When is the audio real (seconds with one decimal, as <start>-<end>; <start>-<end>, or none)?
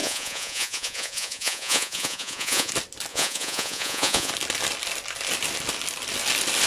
2.7-3.1; 4.3-6.7